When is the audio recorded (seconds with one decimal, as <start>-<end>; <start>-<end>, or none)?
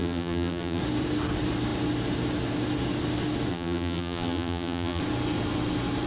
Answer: 0.8-3.5; 5.0-6.1